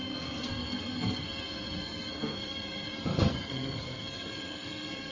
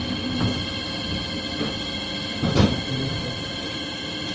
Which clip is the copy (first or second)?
first